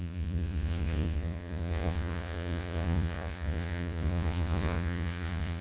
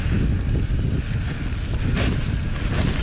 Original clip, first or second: second